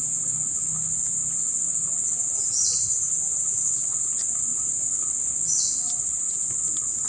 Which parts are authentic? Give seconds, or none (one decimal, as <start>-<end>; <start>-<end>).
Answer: 0.0-1.9; 2.4-7.1